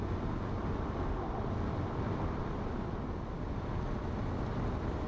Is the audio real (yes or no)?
yes